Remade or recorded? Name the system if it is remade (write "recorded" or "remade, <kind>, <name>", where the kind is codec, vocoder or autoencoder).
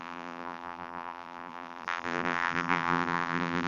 remade, vocoder, BigVGAN v2